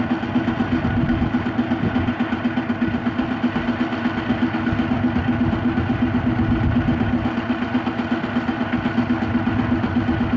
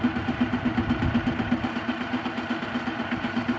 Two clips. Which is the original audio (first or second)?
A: first